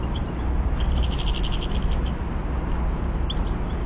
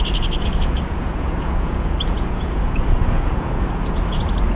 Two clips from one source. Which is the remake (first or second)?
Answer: second